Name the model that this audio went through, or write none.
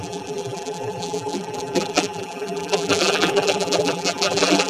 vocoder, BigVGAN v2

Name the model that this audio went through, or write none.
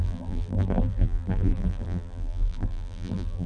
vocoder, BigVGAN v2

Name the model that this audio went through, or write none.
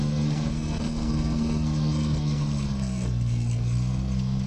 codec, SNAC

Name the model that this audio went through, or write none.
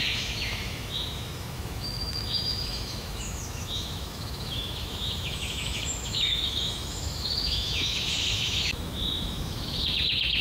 autoencoder, DAC-VAE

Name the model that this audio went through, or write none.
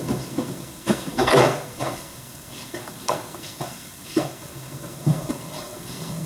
codec, SNAC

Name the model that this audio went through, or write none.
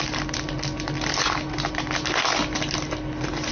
none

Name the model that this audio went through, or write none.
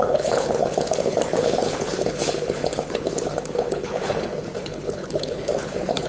codec, HILCodec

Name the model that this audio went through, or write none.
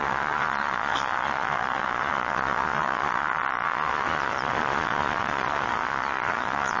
vocoder, Vocos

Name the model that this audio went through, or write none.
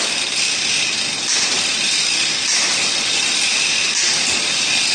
none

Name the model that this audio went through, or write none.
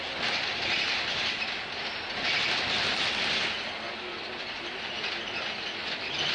none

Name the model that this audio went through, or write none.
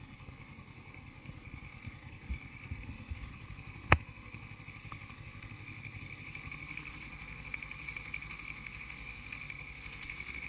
codec, SNAC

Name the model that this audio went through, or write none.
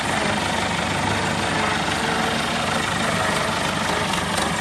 none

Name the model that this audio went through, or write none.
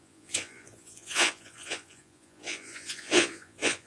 vocoder, Vocos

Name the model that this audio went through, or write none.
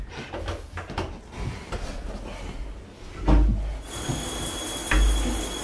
none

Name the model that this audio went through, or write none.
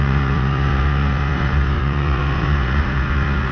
vocoder, Vocos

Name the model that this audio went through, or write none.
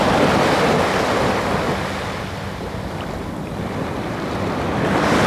none